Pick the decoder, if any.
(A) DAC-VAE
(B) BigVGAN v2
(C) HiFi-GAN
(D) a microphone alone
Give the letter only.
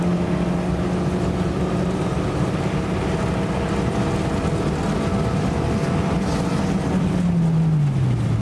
D